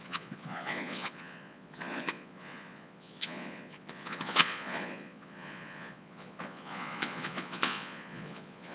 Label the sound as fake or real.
fake